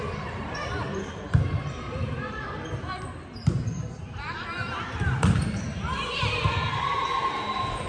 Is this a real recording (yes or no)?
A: no